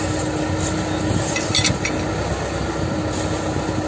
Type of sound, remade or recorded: recorded